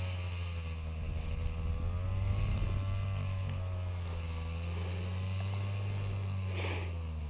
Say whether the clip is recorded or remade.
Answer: recorded